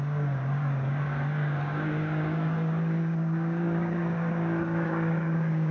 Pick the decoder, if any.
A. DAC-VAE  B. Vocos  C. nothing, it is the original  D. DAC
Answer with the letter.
D